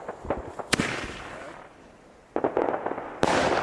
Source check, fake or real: real